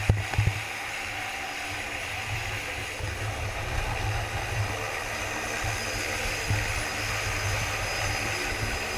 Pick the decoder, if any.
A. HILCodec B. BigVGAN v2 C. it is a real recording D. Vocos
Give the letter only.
C